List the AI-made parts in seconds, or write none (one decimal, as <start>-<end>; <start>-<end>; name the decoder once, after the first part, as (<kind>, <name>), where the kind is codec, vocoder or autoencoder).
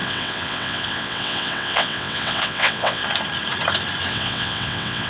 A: 0.0-3.0 (vocoder, WaveNeXt); 4.1-5.1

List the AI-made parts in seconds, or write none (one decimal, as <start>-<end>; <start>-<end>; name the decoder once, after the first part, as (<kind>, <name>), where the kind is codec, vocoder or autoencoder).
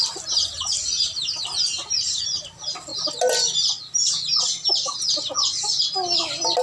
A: none